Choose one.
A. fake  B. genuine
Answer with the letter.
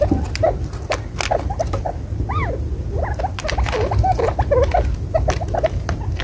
B